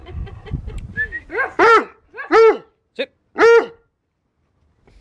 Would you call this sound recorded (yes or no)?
yes